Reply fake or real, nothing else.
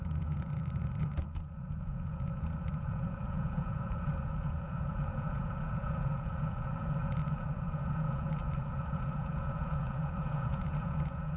fake